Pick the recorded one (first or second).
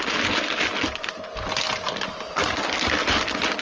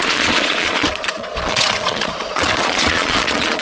first